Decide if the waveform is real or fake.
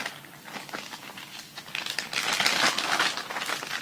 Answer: real